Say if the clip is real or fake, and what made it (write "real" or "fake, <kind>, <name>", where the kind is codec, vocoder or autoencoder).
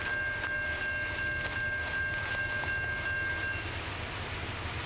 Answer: real